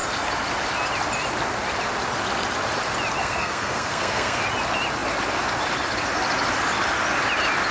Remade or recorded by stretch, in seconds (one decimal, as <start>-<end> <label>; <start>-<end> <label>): 0.0-3.2 recorded; 3.2-4.4 remade; 4.4-7.7 recorded